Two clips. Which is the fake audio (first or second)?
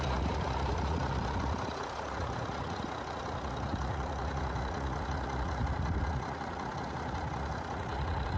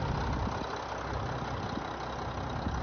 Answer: first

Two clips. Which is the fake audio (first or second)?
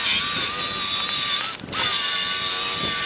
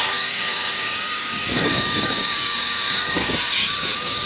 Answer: second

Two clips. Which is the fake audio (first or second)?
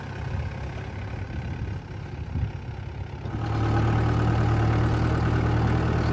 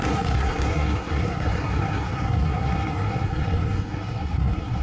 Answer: second